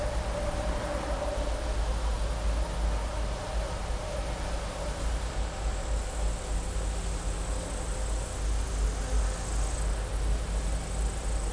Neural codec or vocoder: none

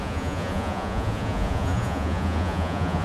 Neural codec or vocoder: vocoder, Vocos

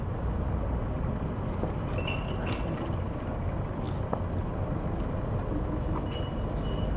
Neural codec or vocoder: none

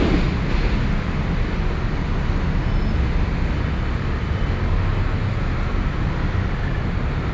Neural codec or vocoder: none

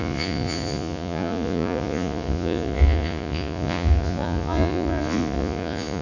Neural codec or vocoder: vocoder, Vocos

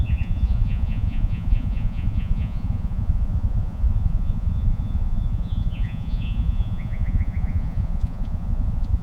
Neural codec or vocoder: vocoder, Vocos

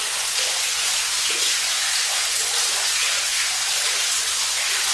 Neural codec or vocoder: vocoder, Vocos